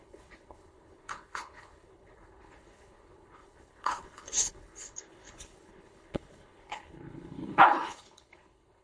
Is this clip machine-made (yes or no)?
yes